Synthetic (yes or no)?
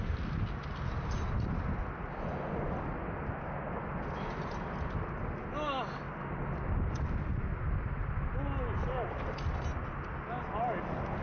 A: no